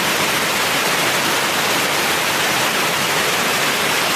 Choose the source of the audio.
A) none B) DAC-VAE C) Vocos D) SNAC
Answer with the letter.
A